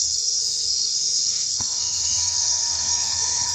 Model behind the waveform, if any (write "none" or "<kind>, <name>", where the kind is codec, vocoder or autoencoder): codec, SNAC